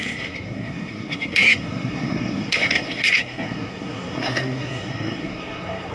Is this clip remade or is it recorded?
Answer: remade